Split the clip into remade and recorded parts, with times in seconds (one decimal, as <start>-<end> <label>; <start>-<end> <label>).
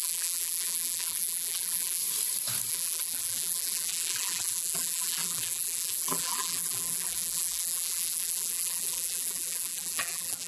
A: 0.0-2.0 remade; 2.0-2.7 recorded; 2.7-10.5 remade